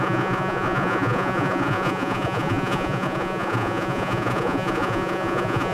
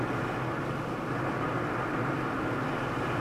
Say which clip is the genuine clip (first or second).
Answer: second